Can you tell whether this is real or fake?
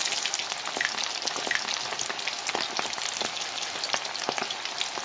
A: real